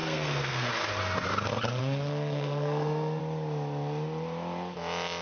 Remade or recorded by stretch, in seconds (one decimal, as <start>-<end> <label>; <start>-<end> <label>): 0.0-0.7 remade; 0.7-1.8 recorded; 1.8-3.2 remade; 3.2-5.2 recorded